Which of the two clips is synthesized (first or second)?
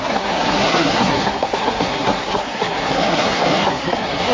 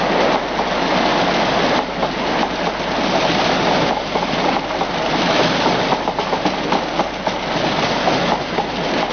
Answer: first